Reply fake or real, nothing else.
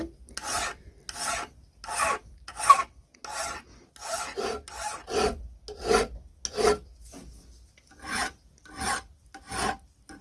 real